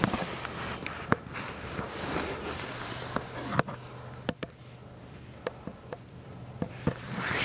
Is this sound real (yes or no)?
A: no